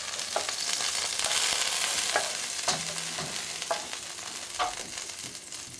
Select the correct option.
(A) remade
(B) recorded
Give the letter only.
B